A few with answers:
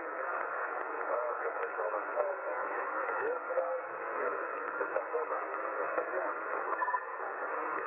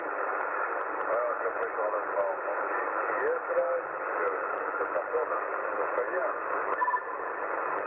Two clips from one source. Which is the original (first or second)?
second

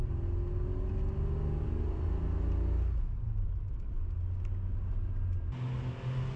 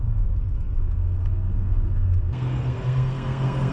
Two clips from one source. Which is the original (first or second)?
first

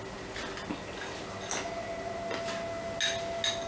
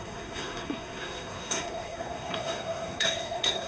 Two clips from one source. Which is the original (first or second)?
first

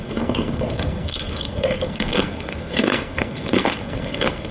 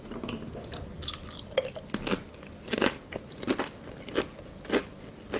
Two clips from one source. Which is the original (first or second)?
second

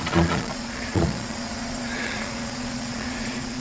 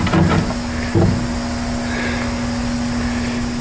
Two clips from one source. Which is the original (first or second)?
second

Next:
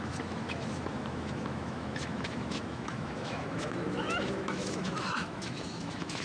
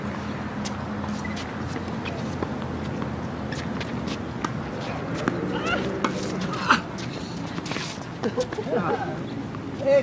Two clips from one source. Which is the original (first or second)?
second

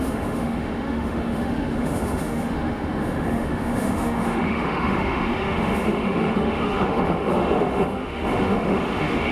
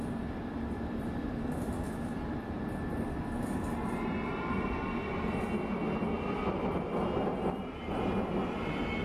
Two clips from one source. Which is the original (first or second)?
second